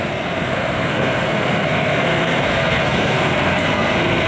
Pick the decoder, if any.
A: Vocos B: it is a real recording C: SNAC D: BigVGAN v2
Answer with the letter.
C